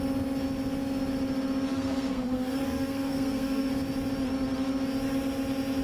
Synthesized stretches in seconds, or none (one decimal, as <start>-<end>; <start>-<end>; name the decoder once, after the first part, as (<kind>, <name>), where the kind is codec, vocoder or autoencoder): 1.7-3.7 (codec, SNAC)